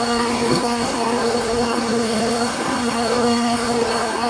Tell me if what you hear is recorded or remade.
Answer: remade